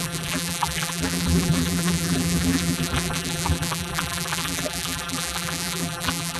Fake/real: fake